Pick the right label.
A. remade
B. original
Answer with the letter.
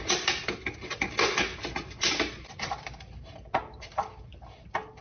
B